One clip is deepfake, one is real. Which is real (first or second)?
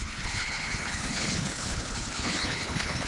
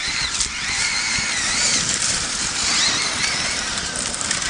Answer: second